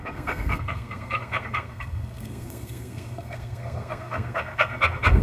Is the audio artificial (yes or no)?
yes